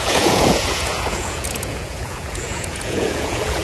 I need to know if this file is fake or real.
fake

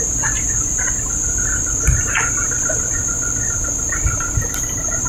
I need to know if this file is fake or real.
real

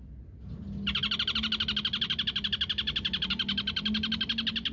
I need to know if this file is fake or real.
real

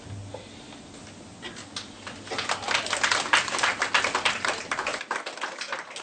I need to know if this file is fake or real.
real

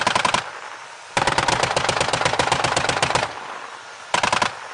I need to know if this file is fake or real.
fake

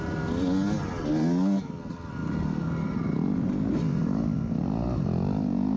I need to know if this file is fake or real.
real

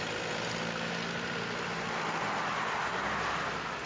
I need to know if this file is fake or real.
real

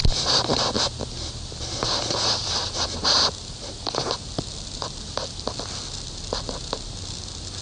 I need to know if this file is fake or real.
real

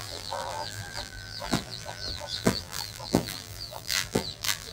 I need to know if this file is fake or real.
fake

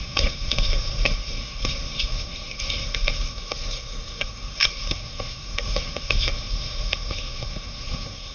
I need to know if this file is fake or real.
fake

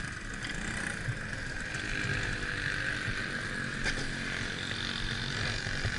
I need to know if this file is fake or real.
real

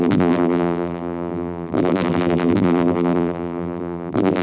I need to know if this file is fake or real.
fake